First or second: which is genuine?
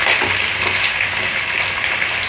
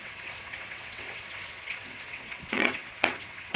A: first